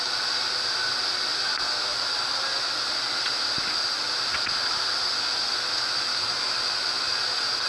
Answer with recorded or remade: recorded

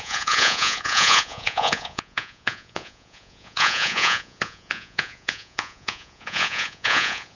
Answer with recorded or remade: remade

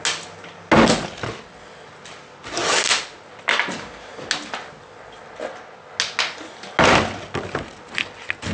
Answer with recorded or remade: recorded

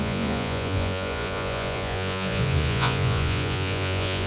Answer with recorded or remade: remade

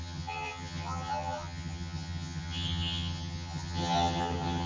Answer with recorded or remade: remade